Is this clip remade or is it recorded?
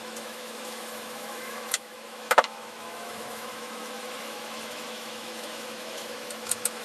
remade